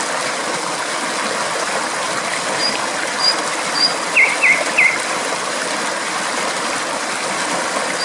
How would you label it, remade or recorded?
remade